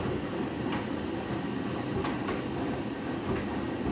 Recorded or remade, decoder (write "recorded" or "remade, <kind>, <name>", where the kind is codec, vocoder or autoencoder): recorded